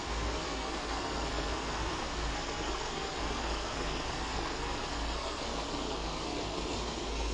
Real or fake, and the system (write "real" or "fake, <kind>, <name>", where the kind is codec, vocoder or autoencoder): fake, codec, SNAC